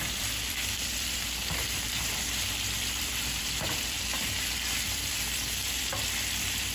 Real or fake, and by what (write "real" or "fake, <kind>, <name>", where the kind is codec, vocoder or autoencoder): fake, vocoder, BigVGAN v2